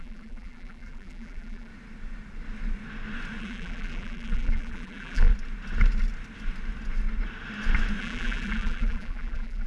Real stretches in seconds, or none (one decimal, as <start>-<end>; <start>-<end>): 1.7-3.4; 5.3-8.0